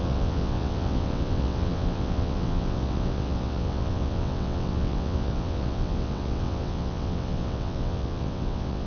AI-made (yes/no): yes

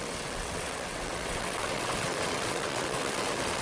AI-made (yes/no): yes